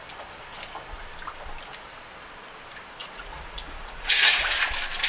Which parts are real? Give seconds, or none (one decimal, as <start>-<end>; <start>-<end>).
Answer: 0.0-3.0; 4.6-5.1